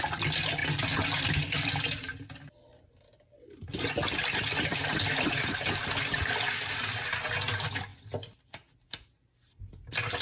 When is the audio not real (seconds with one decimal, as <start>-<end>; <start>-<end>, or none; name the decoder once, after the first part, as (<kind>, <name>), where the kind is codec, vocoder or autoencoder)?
none